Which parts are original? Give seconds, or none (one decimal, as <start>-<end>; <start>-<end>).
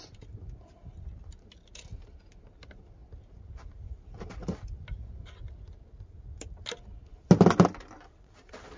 0.0-8.8